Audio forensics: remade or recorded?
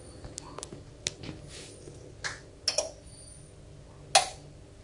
recorded